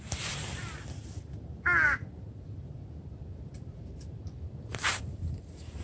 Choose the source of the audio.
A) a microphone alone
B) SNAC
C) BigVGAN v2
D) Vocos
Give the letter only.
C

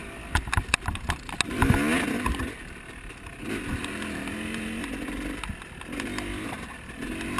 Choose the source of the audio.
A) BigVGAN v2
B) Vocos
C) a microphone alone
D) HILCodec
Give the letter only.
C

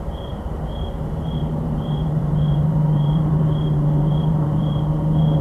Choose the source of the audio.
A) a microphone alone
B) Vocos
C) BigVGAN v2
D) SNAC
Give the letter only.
C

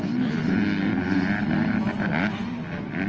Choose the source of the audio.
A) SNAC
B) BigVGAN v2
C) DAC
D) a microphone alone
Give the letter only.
D